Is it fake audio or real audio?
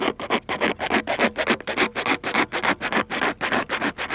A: real